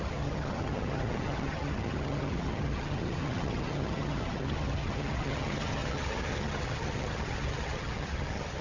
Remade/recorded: remade